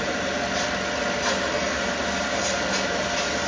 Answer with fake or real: real